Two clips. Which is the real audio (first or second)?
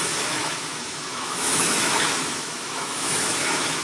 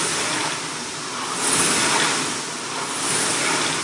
second